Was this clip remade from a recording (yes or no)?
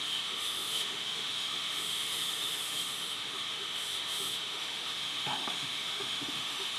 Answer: yes